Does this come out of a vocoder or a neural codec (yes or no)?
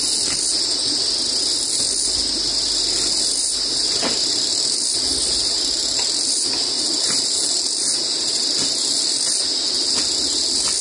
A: no